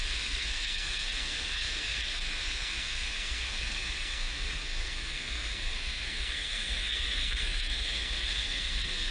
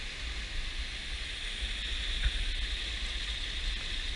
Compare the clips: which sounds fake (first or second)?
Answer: first